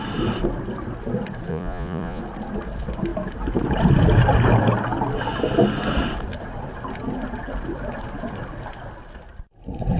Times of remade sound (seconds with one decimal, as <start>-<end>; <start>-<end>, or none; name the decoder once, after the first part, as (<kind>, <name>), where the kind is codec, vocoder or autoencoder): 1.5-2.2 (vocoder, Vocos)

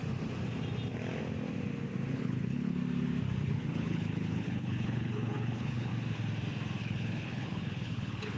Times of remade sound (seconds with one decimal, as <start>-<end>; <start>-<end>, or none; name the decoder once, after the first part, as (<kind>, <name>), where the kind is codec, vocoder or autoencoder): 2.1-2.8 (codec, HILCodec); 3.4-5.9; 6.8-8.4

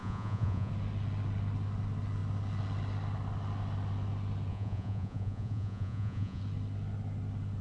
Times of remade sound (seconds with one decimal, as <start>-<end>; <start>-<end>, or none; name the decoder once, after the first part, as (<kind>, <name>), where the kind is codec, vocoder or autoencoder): 0.0-0.7 (vocoder, Vocos); 4.5-6.4

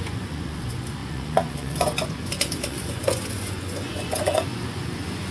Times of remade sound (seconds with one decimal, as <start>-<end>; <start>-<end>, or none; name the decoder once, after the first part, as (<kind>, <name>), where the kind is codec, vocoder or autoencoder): 0.0-5.3 (vocoder, Vocos)

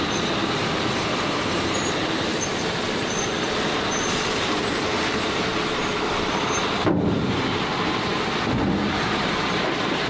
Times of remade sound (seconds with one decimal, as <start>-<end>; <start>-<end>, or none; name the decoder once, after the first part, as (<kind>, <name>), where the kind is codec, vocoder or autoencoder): 0.4-3.3 (vocoder, BigVGAN v2)

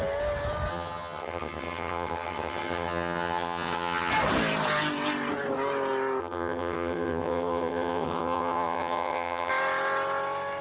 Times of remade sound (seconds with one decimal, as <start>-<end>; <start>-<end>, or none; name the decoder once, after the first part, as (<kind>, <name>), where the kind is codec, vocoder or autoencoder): 0.7-4.1 (vocoder, HiFi-GAN); 6.2-9.5